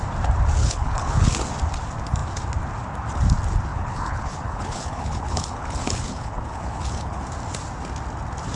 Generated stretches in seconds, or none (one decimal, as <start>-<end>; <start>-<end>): 0.6-1.3; 3.7-7.2